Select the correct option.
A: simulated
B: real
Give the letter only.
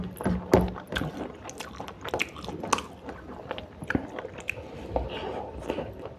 B